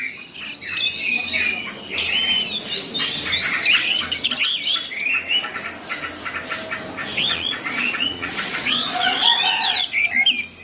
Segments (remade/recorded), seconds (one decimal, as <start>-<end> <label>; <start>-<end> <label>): 0.0-7.0 recorded; 7.0-10.1 remade; 10.1-10.6 recorded

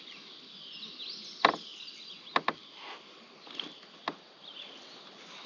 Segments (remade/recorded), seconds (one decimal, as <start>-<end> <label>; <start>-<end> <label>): 0.0-5.5 recorded

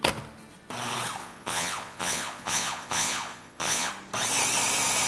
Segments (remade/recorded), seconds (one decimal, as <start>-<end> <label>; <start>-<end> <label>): 0.0-1.2 recorded; 1.2-3.9 remade; 3.9-5.1 recorded